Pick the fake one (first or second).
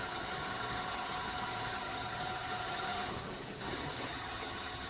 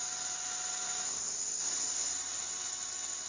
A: first